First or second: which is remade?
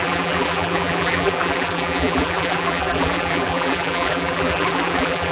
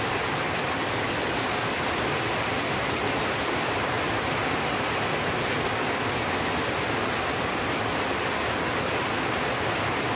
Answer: first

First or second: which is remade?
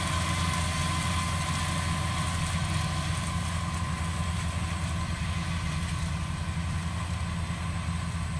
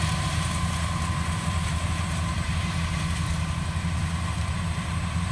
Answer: second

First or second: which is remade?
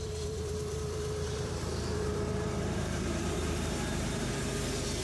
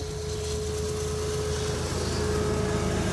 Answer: first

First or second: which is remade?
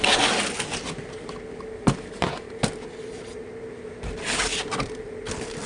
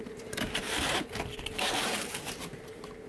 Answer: second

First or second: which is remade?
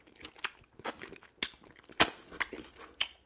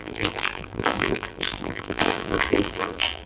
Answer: second